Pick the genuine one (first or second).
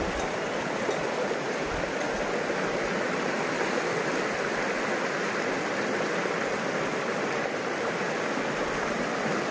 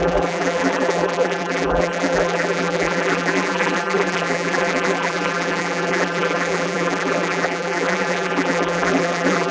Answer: first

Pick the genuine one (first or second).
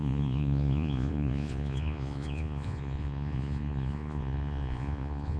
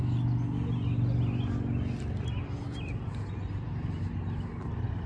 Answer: second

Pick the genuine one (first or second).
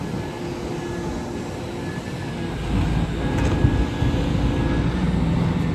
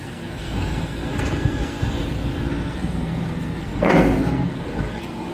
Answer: first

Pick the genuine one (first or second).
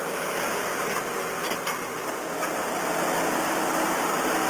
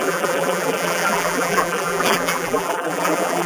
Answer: first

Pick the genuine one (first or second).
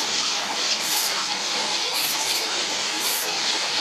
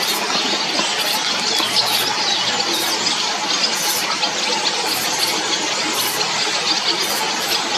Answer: second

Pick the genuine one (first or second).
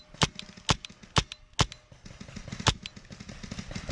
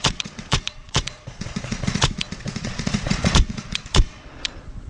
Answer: first